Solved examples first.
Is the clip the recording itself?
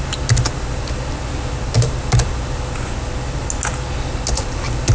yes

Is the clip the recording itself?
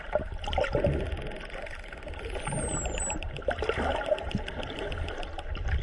yes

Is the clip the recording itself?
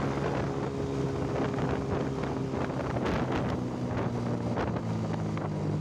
yes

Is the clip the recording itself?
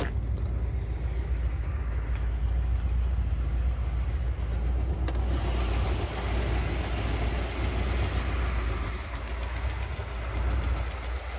yes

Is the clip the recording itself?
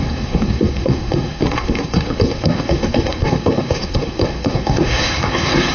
no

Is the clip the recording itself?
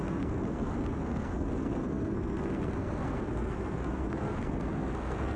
no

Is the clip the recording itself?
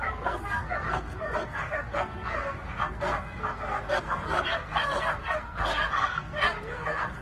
no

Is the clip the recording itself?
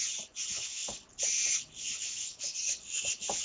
yes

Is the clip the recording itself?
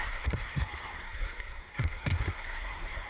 no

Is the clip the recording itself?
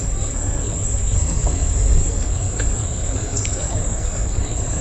no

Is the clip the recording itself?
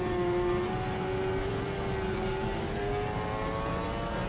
yes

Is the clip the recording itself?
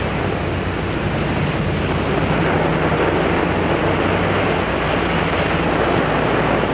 yes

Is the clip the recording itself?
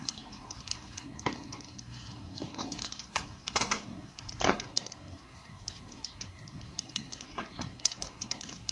no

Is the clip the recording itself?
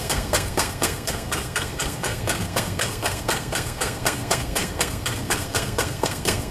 no